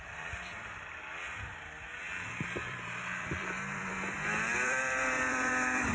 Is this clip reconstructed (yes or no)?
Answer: yes